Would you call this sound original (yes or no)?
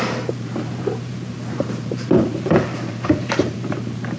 no